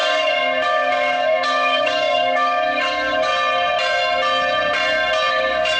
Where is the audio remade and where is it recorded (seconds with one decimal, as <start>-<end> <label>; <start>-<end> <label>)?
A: 0.0-3.3 remade; 3.3-5.3 recorded; 5.3-5.8 remade